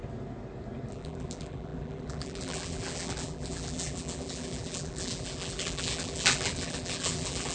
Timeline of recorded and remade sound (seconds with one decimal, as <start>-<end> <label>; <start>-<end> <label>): 0.0-0.9 recorded; 0.9-7.5 remade